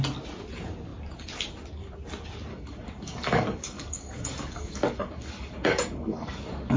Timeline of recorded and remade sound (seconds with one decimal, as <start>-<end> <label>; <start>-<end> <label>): 0.0-2.5 recorded; 2.5-6.8 remade